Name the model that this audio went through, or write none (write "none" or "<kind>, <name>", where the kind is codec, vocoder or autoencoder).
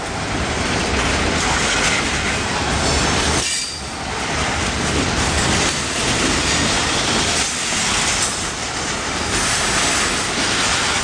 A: none